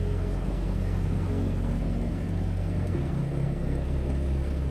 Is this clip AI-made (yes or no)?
yes